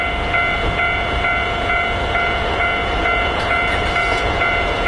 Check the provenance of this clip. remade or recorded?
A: remade